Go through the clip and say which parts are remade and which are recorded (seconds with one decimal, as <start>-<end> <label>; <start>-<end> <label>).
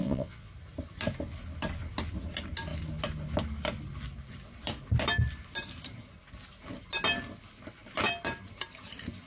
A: 0.0-0.5 remade; 0.5-9.3 recorded